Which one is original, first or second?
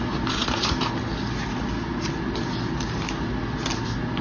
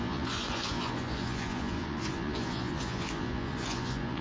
first